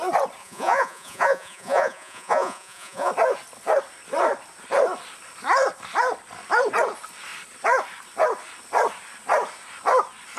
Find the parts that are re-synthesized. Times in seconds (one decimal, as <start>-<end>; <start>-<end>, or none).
0.4-3.1